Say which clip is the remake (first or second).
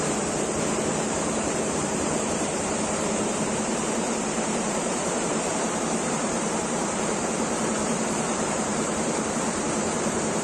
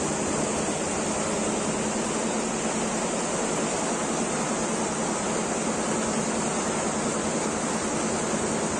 first